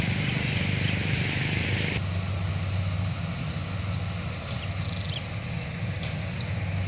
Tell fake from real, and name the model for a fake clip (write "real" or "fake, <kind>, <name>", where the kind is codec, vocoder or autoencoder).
real